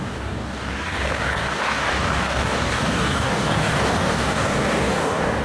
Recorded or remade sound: remade